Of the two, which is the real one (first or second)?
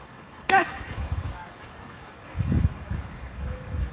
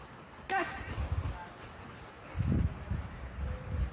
second